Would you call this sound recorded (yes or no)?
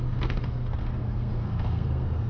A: no